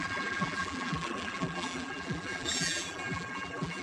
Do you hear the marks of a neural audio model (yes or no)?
yes